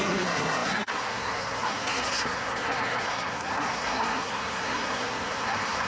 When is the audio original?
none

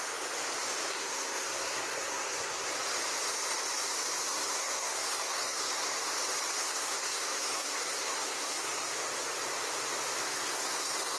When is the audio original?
0.0-0.9; 2.7-4.3; 6.0-6.6; 8.9-10.2

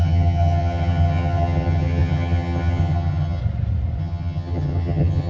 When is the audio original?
3.4-4.0

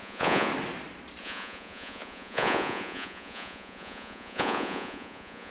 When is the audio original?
0.5-1.2

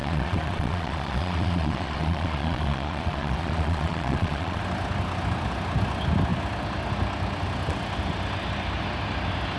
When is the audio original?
4.6-9.6

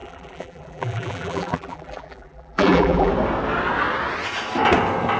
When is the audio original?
3.1-5.2